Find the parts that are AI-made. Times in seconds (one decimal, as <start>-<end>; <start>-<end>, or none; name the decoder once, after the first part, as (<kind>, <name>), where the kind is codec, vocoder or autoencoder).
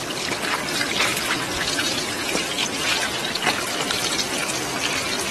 1.1-3.4 (vocoder, Vocos)